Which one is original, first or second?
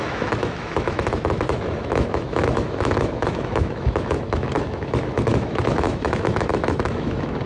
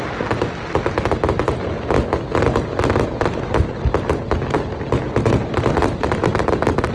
second